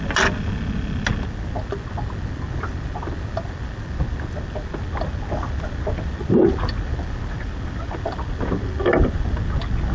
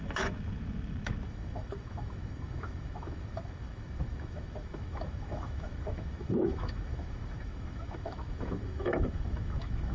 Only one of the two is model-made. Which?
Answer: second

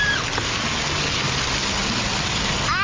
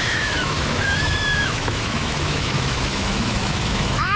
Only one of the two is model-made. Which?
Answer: second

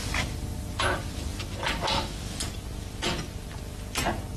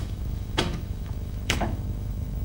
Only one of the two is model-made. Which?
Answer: second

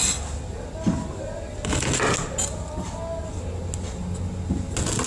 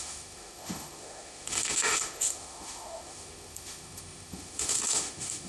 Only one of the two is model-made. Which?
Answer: second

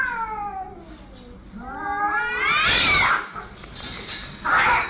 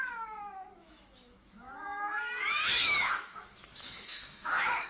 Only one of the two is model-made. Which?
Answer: second